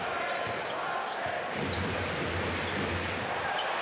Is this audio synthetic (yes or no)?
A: no